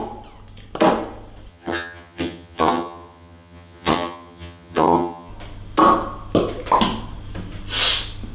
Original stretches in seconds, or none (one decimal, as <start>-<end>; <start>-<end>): 0.0-1.5; 5.3-8.3